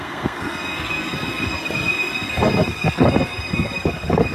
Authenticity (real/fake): fake